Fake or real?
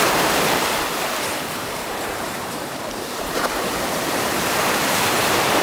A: fake